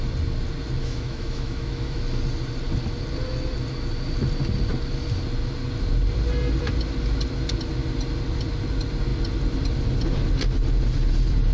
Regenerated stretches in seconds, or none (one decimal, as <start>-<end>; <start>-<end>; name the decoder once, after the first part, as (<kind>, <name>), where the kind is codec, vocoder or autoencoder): 0.8-2.0 (autoencoder, DAC-VAE)